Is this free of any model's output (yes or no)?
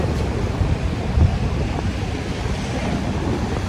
no